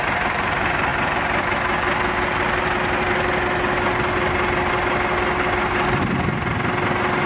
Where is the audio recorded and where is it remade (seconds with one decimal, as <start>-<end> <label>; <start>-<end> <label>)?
0.0-7.3 recorded